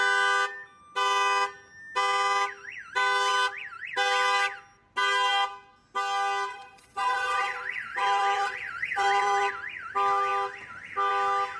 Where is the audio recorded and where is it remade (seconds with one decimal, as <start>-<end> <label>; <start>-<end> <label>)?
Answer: 0.0-6.5 recorded; 6.5-9.5 remade; 9.5-11.6 recorded